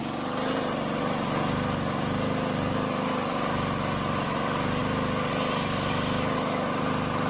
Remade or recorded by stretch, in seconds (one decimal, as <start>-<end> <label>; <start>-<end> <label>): 0.0-2.7 recorded; 2.7-3.5 remade; 3.5-7.3 recorded